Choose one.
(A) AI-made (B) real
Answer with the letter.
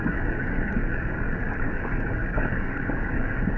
A